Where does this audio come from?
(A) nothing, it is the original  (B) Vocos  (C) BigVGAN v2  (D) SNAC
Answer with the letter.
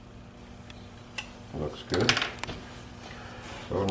A